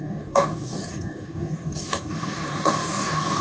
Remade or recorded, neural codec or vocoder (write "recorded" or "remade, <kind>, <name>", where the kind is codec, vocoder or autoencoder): remade, codec, DAC